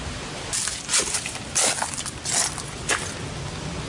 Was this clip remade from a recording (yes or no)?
no